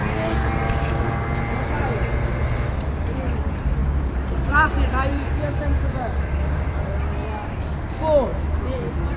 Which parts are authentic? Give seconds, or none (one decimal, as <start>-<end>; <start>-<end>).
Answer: 0.0-5.1; 7.1-9.2